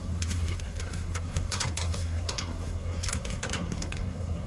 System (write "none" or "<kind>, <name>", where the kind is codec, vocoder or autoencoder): codec, SNAC